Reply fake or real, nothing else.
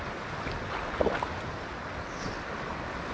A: real